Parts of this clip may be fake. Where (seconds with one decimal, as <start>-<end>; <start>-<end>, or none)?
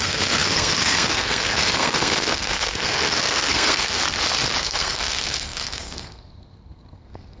0.0-4.0; 4.6-7.4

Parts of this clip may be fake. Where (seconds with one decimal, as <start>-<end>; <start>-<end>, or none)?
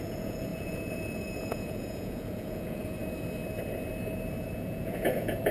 0.0-3.0; 4.5-5.5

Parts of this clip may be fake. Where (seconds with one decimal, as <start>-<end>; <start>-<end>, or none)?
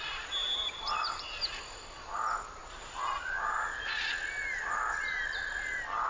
0.4-1.2; 2.6-3.8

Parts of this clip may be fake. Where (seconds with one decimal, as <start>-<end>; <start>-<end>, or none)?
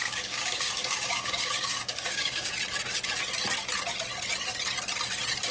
0.0-2.5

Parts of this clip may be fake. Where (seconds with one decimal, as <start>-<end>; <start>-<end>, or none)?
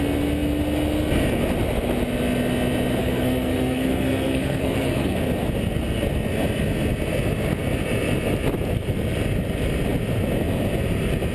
3.0-5.2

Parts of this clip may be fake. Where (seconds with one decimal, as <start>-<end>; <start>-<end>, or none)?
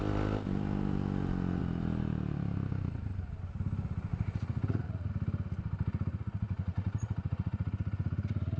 4.1-5.1; 6.1-8.6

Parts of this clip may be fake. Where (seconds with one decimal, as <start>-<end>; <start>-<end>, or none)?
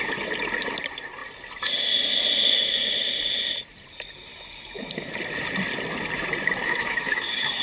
4.3-5.1; 6.6-7.6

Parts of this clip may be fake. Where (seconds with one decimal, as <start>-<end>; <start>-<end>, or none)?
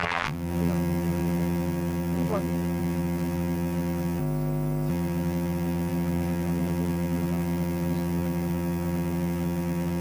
0.0-4.2; 4.9-10.0